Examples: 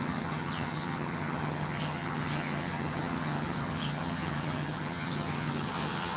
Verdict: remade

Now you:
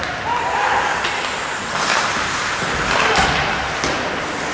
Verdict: recorded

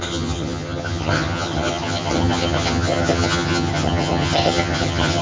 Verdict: remade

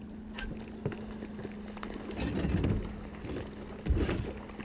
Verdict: recorded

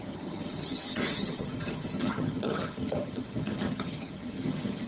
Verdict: remade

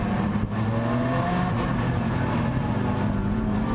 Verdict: recorded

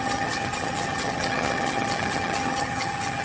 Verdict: remade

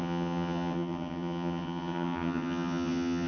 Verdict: remade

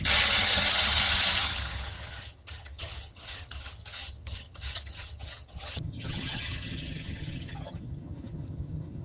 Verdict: remade